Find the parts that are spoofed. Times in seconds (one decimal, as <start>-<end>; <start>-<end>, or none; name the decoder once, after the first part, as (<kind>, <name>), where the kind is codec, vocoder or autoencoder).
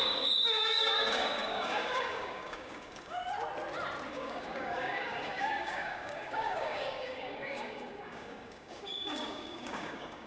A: 0.0-3.2 (codec, DAC); 4.1-10.3